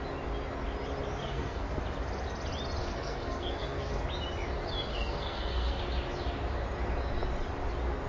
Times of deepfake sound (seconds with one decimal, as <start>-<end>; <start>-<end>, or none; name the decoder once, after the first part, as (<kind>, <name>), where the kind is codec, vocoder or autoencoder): 1.2-1.8 (codec, SNAC); 2.8-3.9; 4.9-5.8